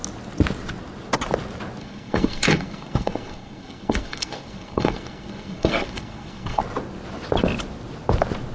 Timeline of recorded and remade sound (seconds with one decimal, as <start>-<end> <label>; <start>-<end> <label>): 0.0-1.8 recorded; 1.8-6.6 remade; 6.6-8.5 recorded